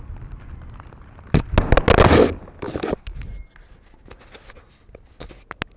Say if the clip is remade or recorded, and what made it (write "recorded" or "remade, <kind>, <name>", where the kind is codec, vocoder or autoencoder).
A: recorded